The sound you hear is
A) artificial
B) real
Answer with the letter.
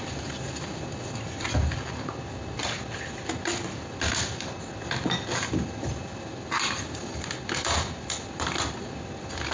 B